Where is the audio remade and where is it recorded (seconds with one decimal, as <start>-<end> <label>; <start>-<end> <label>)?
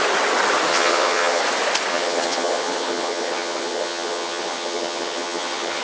0.0-0.7 recorded; 0.7-1.4 remade; 1.4-1.9 recorded; 1.9-5.8 remade